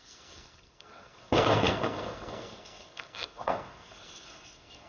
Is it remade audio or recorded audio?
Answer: remade